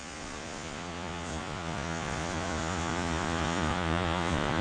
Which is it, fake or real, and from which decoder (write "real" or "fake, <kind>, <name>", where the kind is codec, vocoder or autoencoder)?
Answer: fake, vocoder, Vocos